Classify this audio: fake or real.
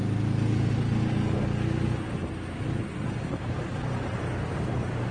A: real